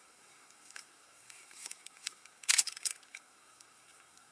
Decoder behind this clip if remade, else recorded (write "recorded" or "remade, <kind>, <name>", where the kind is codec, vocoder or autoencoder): remade, codec, SNAC